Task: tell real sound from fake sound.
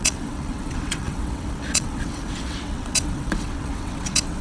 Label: fake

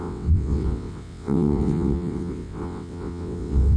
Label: fake